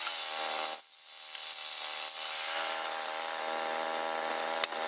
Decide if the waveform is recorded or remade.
recorded